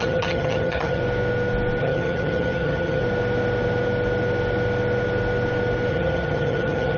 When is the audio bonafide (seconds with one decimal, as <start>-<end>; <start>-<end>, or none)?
1.0-1.8; 3.0-5.9